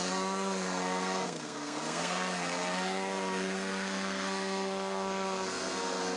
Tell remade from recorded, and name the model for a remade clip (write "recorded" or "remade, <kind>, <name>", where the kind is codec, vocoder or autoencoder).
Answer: remade, codec, SNAC